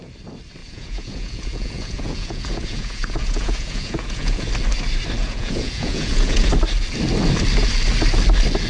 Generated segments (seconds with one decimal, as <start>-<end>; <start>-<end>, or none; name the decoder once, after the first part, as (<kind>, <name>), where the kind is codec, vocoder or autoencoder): 0.6-4.5 (vocoder, Vocos); 5.2-6.5